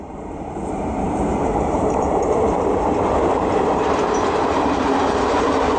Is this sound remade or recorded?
remade